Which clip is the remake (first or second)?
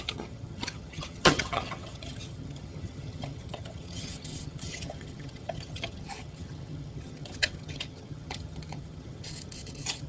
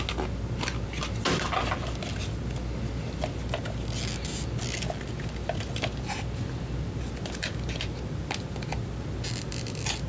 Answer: first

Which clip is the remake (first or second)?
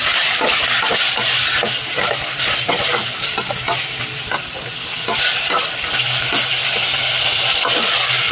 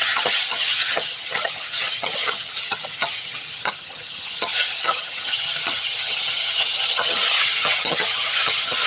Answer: second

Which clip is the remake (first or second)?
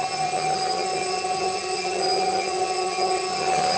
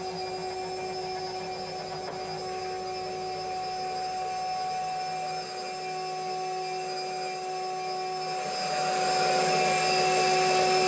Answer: first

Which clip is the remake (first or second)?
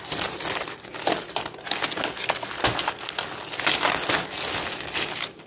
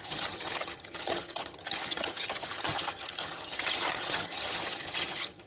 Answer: second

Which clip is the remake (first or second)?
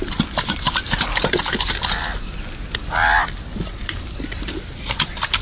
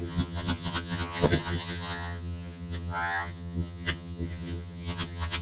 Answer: second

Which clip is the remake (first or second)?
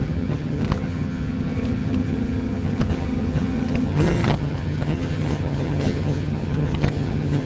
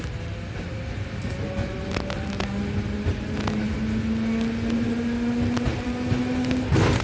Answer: first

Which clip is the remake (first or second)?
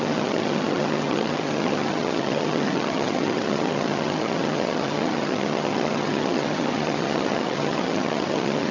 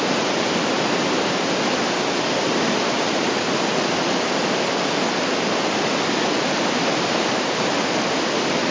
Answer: first